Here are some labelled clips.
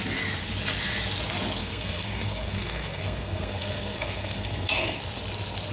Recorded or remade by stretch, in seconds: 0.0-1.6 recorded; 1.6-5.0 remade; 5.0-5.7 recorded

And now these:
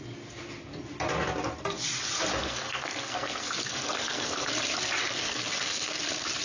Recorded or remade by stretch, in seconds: 0.0-2.4 recorded; 2.4-4.5 remade; 4.5-5.0 recorded; 5.0-6.0 remade; 6.0-6.4 recorded

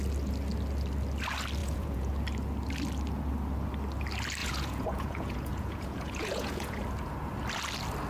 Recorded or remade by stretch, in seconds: 0.0-1.6 recorded; 1.6-2.1 remade; 2.1-4.4 recorded; 4.4-6.8 remade; 6.8-8.1 recorded

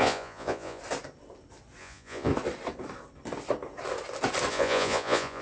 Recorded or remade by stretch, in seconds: 0.0-0.8 remade; 0.8-1.8 recorded; 1.8-2.3 remade; 2.3-4.5 recorded; 4.5-5.4 remade

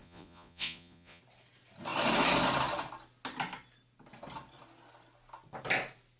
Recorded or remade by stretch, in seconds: 0.0-1.2 remade; 1.2-6.2 recorded

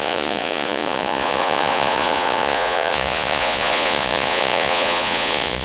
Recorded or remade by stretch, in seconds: 0.0-5.6 remade

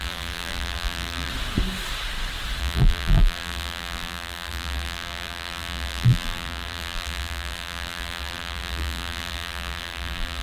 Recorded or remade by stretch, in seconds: 0.0-1.3 remade; 1.3-2.6 recorded; 2.6-10.4 remade